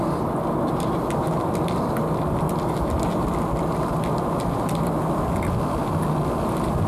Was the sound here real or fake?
real